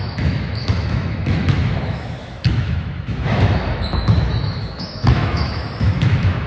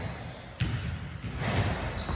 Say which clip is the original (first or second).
second